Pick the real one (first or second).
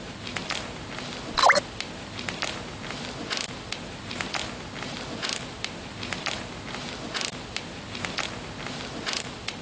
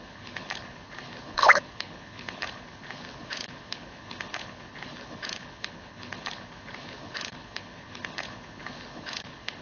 first